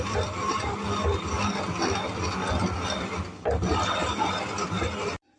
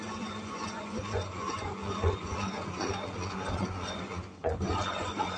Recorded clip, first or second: first